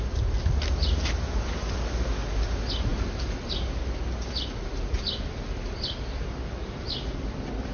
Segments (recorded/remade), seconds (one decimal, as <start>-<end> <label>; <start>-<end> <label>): 0.0-7.7 recorded